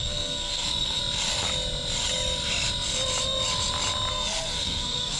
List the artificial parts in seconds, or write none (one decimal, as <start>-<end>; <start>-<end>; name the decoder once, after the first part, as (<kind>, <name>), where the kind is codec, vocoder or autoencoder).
0.0-1.0 (codec, SNAC); 4.1-5.2